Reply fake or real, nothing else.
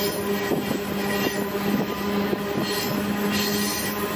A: real